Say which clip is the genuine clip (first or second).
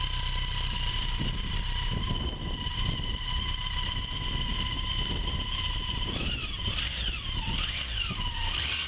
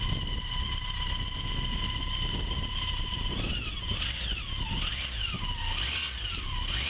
second